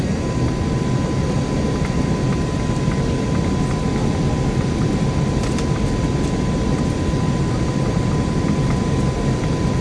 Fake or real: real